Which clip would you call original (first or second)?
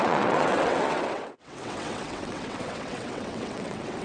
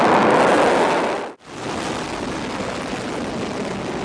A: second